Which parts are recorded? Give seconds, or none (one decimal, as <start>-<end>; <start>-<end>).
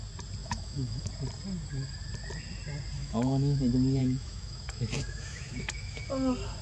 0.0-0.4; 1.1-3.0; 3.6-4.0; 6.1-6.6